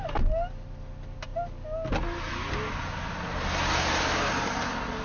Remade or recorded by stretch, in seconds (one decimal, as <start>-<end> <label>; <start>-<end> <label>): 0.0-5.0 recorded